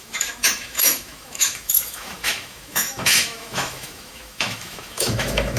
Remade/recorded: remade